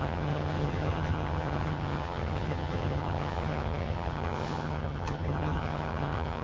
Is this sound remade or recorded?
remade